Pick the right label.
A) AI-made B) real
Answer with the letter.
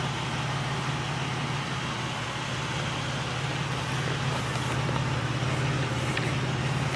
B